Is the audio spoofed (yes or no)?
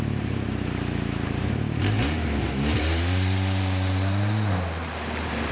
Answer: yes